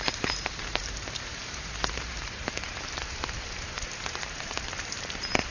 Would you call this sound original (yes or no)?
no